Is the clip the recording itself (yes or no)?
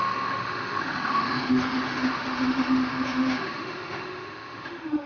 no